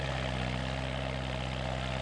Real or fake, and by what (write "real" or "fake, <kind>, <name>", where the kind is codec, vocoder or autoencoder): real